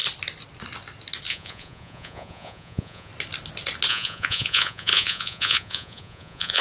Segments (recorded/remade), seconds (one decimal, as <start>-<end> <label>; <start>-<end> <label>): 0.0-1.3 recorded; 1.3-3.1 remade; 3.1-3.9 recorded; 3.9-6.6 remade